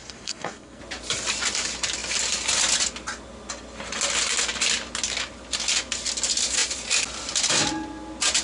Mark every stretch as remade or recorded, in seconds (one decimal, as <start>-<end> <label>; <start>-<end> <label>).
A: 0.0-0.8 remade; 0.8-8.4 recorded